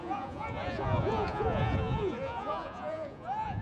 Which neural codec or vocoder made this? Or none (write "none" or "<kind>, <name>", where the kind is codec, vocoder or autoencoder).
vocoder, Vocos